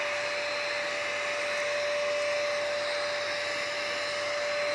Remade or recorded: recorded